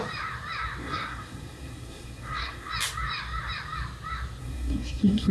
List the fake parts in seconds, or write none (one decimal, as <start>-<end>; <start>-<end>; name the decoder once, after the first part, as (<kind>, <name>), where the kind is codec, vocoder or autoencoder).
0.8-2.7 (codec, SNAC); 4.4-5.3